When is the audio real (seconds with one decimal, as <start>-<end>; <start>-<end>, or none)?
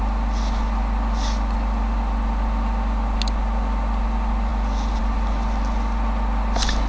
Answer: 0.0-6.9